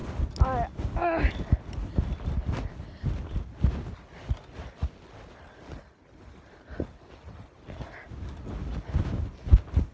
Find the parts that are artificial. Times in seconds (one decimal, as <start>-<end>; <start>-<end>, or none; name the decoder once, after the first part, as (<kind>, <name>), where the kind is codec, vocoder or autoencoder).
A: none